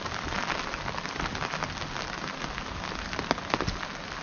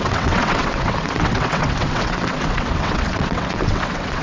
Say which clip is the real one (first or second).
first